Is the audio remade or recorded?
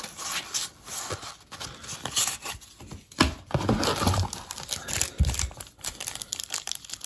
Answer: recorded